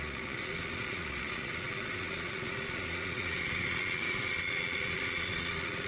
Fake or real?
fake